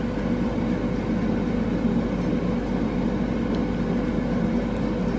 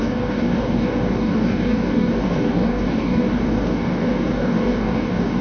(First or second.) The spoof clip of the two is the second